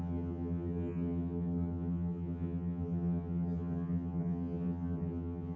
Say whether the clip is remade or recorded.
remade